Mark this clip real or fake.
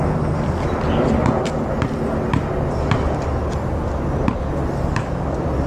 real